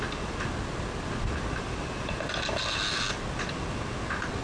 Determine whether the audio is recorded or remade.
recorded